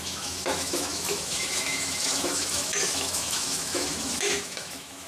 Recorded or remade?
remade